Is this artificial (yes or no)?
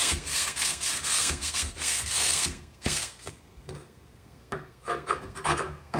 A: yes